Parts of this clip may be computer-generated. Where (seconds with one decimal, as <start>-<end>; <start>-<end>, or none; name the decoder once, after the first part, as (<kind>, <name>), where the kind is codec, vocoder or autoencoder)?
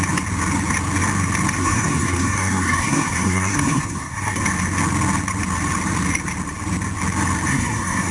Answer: 1.6-4.4 (codec, SNAC); 7.5-8.1